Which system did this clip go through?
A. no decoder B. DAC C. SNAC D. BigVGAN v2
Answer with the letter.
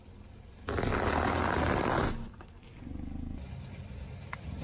A